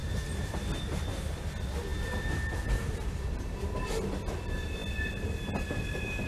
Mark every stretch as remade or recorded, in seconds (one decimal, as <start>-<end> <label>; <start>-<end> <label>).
0.0-1.9 recorded; 1.9-3.8 remade; 3.8-6.3 recorded